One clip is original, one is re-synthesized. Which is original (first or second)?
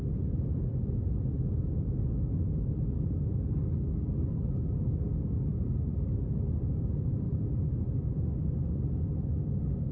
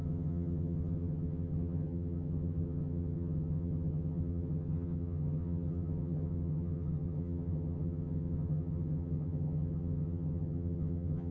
first